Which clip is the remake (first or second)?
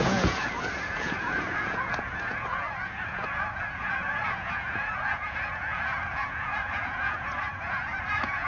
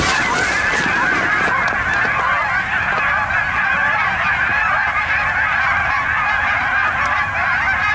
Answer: first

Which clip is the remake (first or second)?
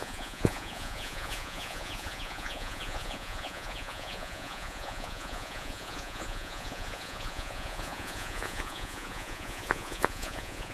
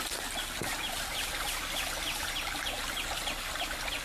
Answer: first